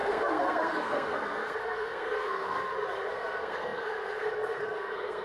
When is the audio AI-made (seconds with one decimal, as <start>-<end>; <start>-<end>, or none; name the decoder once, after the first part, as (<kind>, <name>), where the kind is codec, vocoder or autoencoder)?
0.0-2.6 (codec, SNAC); 3.1-5.2